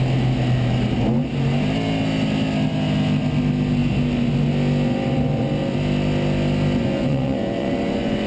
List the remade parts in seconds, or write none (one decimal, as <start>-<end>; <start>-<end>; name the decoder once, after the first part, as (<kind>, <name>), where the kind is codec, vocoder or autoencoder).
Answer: 6.8-8.3 (vocoder, Vocos)